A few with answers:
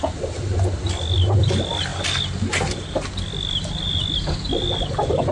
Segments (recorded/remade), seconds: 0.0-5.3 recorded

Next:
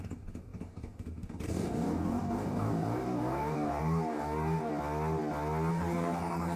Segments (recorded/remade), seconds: 0.0-4.7 remade; 4.7-5.7 recorded; 5.7-6.6 remade

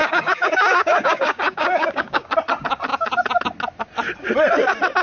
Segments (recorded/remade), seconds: 0.0-2.3 remade; 2.3-5.0 recorded

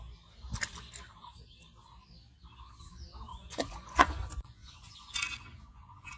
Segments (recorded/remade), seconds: 0.0-3.3 recorded; 3.3-6.2 remade

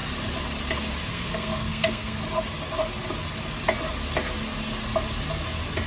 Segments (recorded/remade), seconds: 0.0-1.1 recorded; 1.1-2.2 remade; 2.2-5.9 recorded

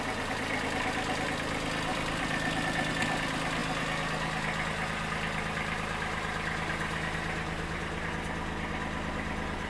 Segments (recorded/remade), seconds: 0.0-1.9 recorded; 1.9-2.9 remade; 2.9-9.7 recorded

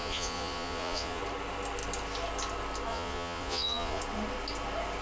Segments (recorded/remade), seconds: 0.0-1.2 remade; 1.2-2.9 recorded; 2.9-4.0 remade; 4.0-5.0 recorded